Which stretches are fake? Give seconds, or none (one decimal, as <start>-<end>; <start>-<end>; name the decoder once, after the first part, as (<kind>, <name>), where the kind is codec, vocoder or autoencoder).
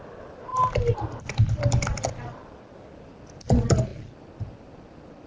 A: none